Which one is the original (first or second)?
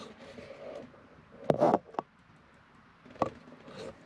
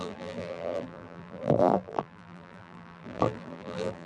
first